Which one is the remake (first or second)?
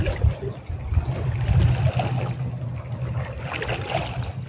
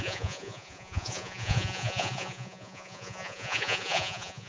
second